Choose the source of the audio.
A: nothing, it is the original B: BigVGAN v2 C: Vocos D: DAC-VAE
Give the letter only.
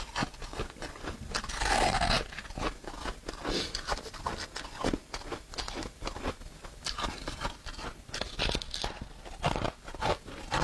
A